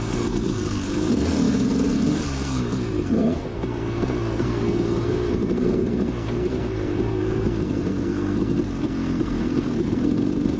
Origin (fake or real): fake